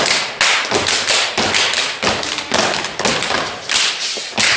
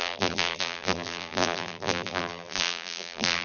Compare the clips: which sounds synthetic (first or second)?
second